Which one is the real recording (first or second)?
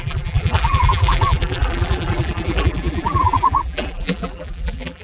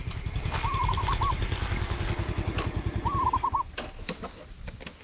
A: second